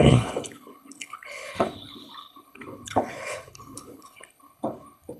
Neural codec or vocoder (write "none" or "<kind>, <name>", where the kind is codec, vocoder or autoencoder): codec, HILCodec